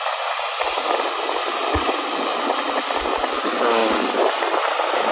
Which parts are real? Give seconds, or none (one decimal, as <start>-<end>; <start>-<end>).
0.0-1.6; 3.2-5.1